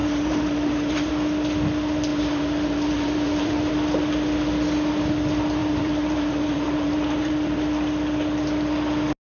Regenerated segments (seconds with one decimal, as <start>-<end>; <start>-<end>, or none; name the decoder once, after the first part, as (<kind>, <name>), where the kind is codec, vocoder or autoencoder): 0.0-1.1 (vocoder, BigVGAN v2); 2.1-3.7; 5.6-7.6